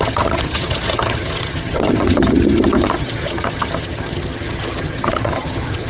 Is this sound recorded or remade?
remade